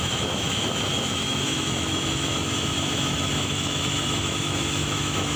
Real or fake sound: fake